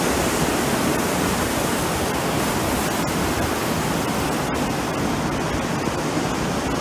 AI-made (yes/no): no